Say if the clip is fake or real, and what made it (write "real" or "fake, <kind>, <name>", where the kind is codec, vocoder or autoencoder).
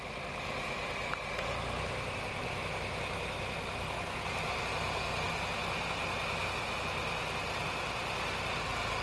real